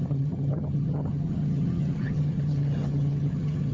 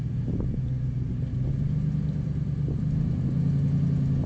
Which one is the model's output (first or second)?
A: first